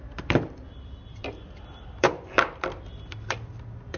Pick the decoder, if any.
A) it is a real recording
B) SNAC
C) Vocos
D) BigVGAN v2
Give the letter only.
D